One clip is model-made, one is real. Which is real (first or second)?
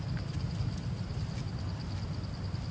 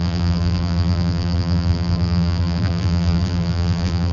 first